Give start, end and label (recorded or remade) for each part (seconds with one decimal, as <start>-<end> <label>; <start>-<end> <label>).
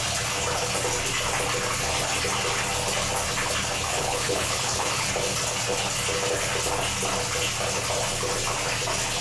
0.0-3.9 recorded; 3.9-5.1 remade; 5.1-9.2 recorded